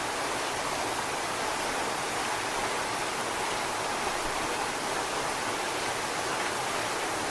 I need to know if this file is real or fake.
real